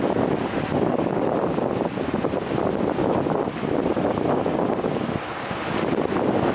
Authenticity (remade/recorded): recorded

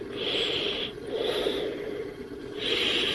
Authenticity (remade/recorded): recorded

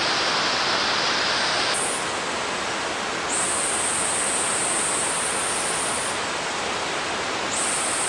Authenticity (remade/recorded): recorded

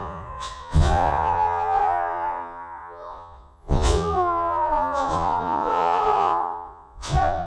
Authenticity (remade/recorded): remade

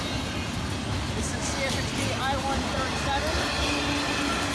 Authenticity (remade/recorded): recorded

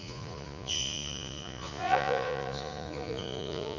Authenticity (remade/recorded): remade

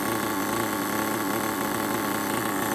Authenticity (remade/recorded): recorded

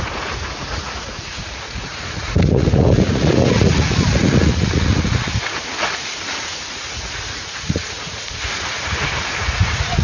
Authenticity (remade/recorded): remade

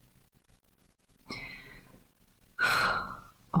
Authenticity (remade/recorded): remade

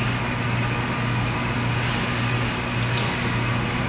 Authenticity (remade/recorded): recorded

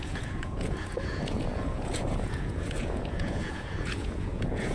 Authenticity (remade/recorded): remade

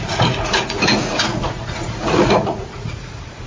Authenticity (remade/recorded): remade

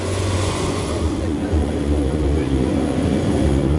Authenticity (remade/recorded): remade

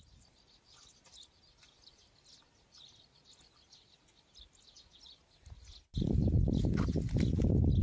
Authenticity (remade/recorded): recorded